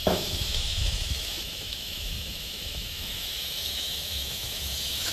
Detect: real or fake fake